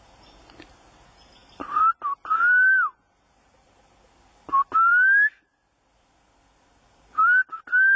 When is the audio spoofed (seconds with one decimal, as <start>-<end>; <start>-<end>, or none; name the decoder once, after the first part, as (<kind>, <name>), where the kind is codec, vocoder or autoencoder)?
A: none